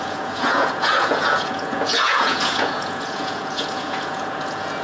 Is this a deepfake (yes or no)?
yes